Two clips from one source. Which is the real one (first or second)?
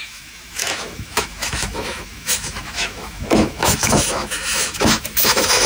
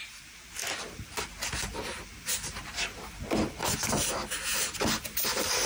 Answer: second